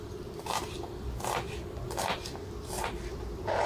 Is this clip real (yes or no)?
yes